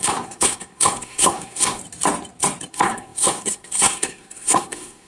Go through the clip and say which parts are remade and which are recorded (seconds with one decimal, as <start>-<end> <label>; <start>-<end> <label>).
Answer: 0.0-1.8 remade; 1.8-2.7 recorded; 2.7-5.1 remade